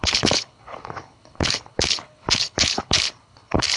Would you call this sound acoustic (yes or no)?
no